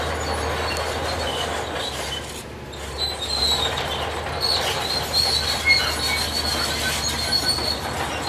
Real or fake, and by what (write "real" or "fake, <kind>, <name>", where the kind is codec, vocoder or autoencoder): real